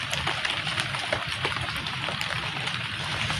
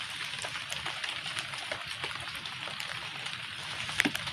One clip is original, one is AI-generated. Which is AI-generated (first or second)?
first